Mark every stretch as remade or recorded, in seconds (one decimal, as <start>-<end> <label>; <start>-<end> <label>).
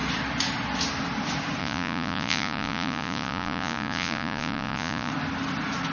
0.0-1.6 recorded; 1.6-5.1 remade; 5.1-5.9 recorded